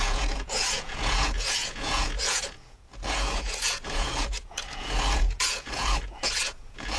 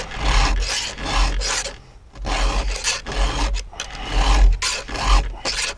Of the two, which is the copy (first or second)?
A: first